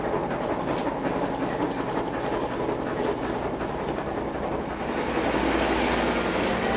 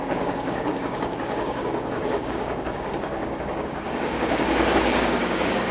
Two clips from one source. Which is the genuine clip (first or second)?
first